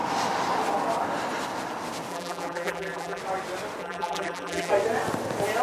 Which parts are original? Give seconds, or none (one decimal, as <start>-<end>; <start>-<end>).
0.0-2.1; 3.2-3.8; 4.7-5.6